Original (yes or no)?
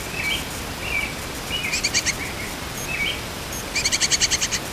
yes